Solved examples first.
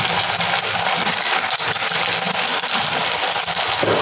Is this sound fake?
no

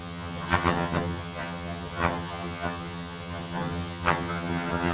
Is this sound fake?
yes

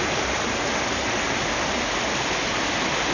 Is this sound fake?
no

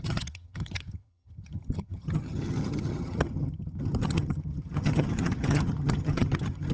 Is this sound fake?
yes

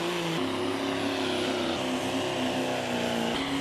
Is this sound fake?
no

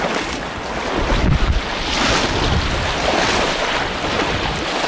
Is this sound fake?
no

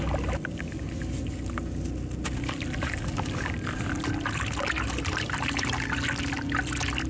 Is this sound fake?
no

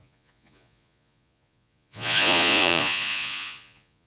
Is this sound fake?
yes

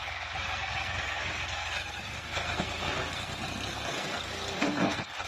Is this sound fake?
yes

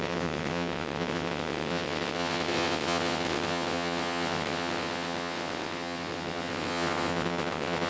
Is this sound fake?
yes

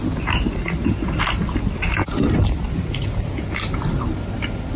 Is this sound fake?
no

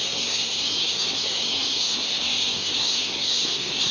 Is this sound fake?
yes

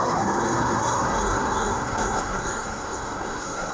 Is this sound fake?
yes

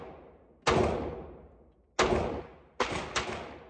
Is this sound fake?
no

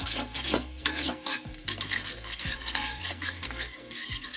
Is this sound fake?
yes